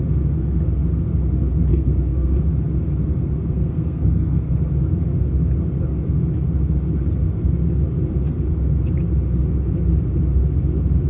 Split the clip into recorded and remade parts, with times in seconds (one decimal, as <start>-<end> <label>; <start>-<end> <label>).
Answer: 0.0-1.7 recorded; 1.7-2.4 remade; 2.4-3.1 recorded; 3.1-4.5 remade; 4.5-11.1 recorded